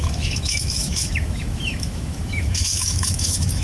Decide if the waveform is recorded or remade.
remade